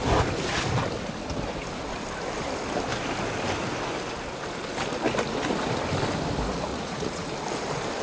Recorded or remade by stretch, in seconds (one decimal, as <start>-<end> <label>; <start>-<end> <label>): 0.0-6.7 recorded; 6.7-7.3 remade; 7.3-8.0 recorded